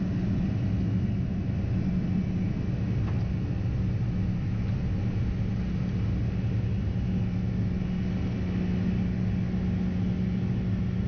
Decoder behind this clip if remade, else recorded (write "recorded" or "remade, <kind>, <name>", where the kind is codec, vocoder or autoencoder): recorded